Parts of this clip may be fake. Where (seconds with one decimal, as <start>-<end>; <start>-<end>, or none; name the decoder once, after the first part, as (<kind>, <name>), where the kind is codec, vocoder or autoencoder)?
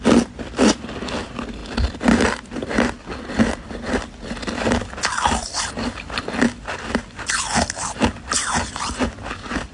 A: none